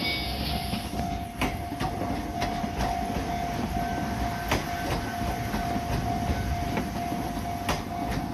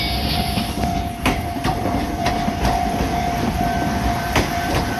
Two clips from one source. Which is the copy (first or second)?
second